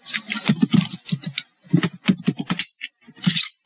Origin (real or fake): fake